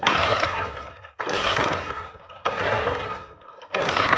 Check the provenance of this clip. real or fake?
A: fake